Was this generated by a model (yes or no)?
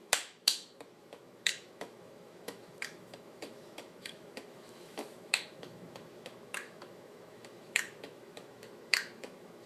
yes